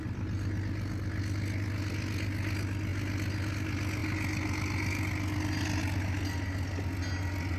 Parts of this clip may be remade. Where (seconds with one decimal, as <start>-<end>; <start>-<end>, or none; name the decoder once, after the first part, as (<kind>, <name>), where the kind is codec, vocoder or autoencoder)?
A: none